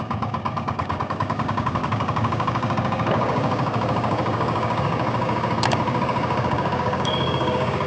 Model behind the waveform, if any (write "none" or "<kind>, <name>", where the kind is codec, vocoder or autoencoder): codec, DAC